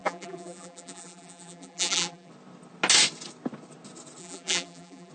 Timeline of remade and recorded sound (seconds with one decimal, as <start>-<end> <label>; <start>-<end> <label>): 0.0-2.3 remade; 2.3-4.2 recorded; 4.2-5.1 remade